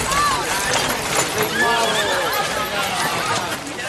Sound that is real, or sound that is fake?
real